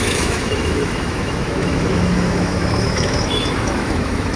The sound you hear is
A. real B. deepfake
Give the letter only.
B